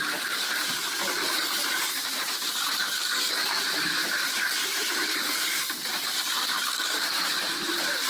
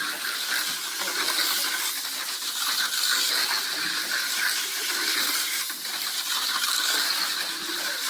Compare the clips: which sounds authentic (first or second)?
second